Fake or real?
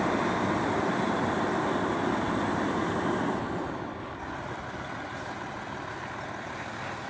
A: real